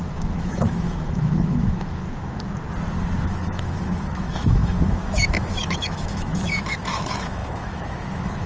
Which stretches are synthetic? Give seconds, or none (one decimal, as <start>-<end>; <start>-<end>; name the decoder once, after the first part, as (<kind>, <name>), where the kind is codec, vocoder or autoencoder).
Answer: 0.0-2.0 (autoencoder, DAC-VAE); 3.2-8.5